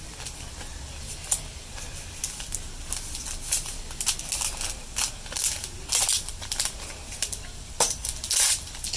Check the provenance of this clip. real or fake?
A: real